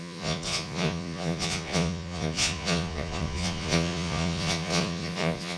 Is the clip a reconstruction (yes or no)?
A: yes